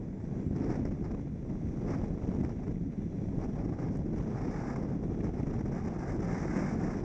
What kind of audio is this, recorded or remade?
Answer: recorded